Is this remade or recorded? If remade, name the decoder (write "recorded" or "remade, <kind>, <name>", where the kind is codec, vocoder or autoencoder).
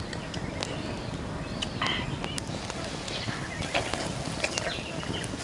recorded